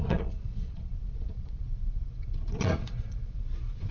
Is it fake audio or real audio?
fake